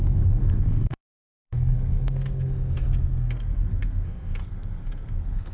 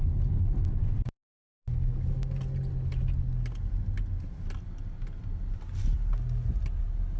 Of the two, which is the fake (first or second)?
first